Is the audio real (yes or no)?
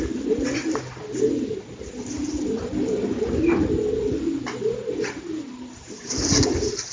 yes